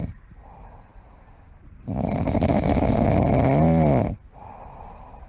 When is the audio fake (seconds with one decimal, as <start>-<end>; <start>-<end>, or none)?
0.9-4.1